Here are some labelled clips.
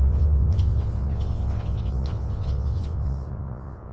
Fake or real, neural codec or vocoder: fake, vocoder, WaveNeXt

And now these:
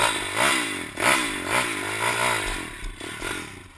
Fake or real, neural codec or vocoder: real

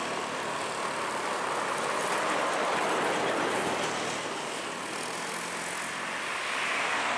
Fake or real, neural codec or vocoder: real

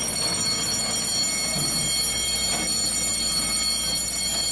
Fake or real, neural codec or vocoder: real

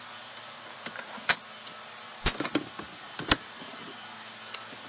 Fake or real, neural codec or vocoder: real